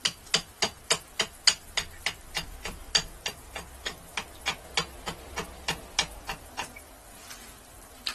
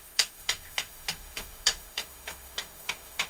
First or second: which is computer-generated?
second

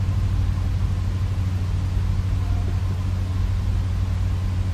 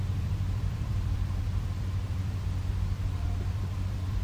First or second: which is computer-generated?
second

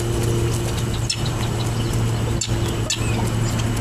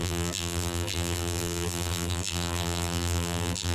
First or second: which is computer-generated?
second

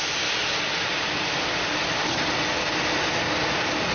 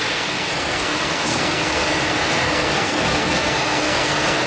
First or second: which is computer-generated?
second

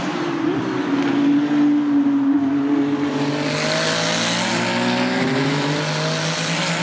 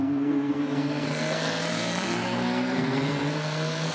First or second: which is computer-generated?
second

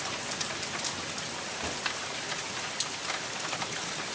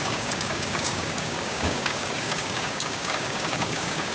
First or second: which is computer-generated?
second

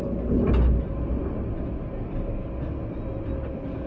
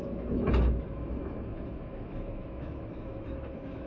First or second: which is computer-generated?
second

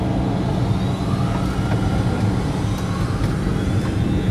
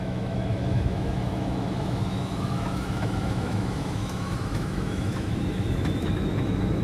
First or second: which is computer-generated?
second